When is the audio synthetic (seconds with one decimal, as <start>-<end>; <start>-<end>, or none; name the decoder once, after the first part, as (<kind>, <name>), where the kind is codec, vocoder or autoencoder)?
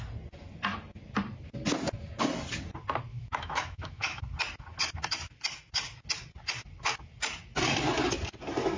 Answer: 3.1-4.2 (autoencoder, DAC-VAE)